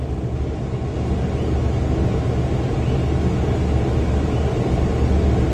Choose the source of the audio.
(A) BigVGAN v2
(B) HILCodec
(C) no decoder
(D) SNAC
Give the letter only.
C